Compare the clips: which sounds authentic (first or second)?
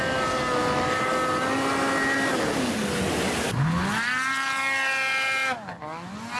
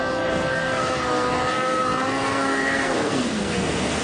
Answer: first